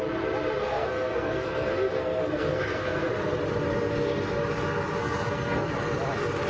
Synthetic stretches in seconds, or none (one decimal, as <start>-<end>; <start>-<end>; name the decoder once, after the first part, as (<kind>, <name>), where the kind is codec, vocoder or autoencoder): 0.6-3.1 (codec, SNAC); 5.0-5.7

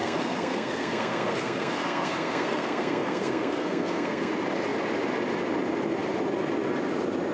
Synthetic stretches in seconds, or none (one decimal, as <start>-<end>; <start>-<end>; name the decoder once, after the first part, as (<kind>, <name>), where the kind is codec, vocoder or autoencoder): 0.0-4.3 (codec, SNAC)